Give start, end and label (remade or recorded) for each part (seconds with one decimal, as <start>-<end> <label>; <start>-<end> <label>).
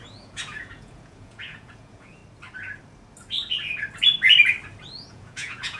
0.0-2.2 remade; 2.2-5.1 recorded; 5.1-5.8 remade